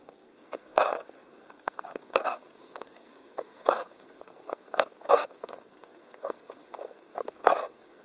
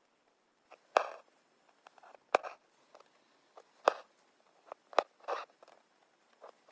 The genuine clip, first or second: second